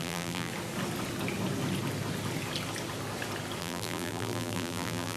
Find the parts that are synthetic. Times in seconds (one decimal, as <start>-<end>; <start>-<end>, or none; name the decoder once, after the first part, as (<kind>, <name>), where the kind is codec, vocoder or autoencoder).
0.0-0.5 (vocoder, BigVGAN v2); 3.6-5.2